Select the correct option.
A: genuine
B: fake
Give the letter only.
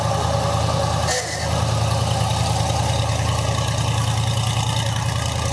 A